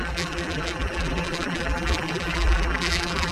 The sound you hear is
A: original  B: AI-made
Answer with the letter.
B